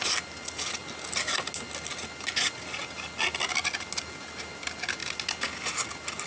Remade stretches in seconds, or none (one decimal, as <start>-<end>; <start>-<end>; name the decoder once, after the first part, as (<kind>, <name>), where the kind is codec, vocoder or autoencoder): none

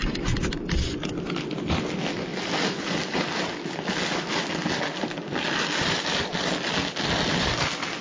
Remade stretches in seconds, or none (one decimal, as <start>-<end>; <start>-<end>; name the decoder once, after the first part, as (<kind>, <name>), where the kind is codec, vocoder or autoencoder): none

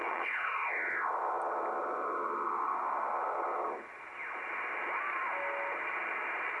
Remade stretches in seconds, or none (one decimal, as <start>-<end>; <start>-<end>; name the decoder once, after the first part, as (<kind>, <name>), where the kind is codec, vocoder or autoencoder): 0.0-0.5 (vocoder, WaveNeXt)

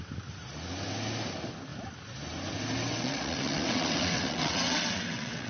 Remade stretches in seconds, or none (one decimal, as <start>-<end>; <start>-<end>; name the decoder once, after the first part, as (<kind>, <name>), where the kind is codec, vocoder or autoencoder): 2.9-5.5 (vocoder, WaveNeXt)